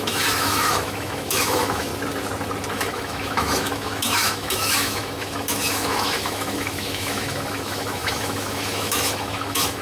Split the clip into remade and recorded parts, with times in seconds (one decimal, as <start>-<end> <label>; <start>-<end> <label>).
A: 0.0-1.9 remade; 1.9-2.7 recorded; 2.7-9.8 remade